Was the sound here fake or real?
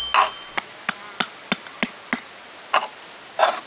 real